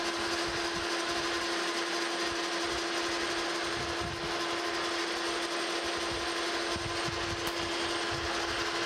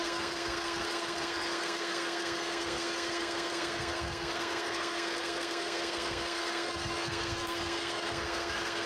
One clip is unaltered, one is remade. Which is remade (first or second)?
second